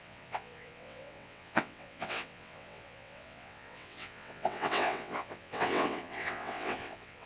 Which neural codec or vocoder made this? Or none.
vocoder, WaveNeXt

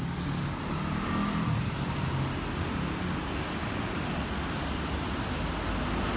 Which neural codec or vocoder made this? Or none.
none